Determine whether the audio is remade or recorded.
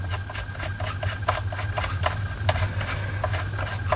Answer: recorded